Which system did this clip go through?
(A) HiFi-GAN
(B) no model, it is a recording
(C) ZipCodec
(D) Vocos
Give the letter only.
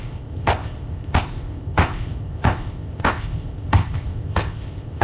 C